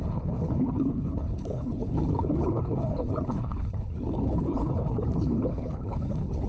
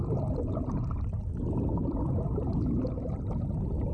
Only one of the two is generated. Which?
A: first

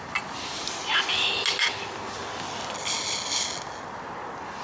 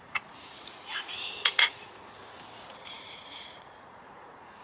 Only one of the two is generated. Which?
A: second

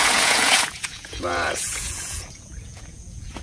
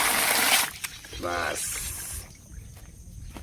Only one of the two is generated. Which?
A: first